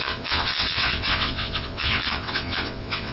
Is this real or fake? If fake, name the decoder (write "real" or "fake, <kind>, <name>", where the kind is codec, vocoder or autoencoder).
fake, vocoder, WaveNeXt